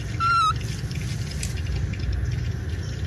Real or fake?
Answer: real